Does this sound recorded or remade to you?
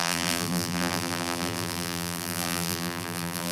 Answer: remade